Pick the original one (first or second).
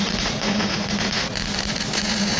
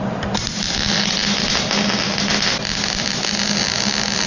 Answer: second